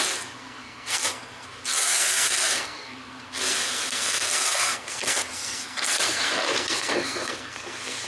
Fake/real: fake